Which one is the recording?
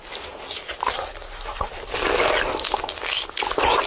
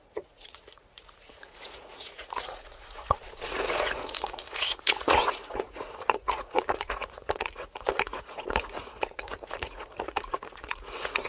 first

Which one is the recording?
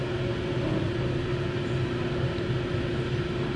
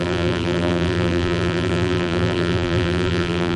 first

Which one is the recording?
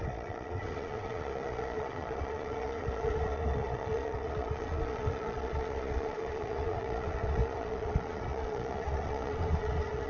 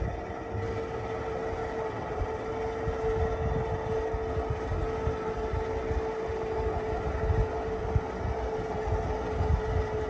second